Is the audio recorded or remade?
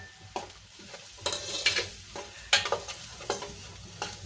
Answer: recorded